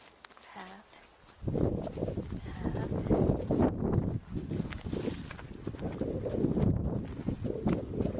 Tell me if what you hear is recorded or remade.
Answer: recorded